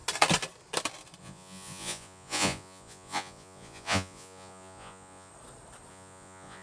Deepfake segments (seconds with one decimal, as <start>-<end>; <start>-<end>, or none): 1.2-5.3; 5.9-6.6